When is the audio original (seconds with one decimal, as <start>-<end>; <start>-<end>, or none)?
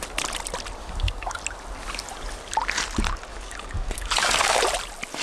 0.0-0.8; 1.4-3.3; 4.6-5.2